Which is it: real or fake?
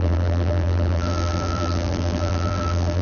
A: fake